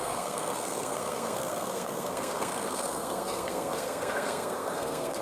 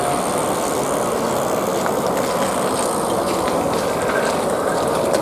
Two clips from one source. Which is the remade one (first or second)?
first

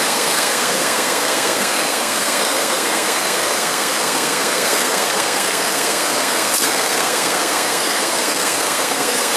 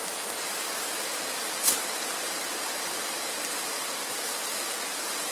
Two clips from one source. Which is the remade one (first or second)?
first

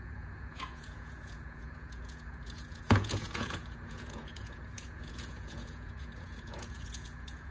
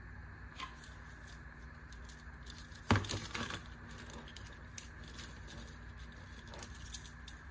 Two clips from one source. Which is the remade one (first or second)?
first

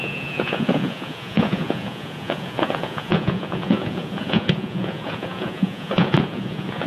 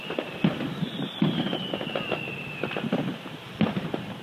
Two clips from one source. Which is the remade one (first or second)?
first